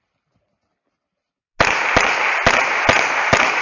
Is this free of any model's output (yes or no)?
yes